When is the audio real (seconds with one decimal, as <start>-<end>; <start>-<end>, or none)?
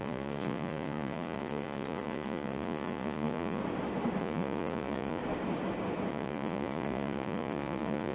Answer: 3.6-4.2; 5.2-6.1